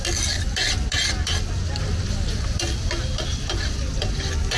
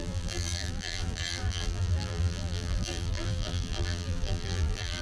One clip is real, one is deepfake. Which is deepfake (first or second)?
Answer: second